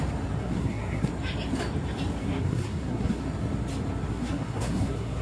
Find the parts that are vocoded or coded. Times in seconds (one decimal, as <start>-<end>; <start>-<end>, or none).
0.4-1.1; 2.2-3.2; 4.1-5.2